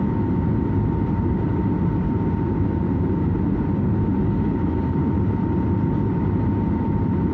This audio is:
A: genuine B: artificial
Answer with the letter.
A